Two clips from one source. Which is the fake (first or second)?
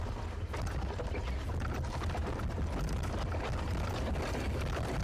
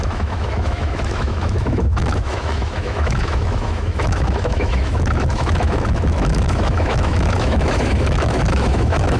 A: second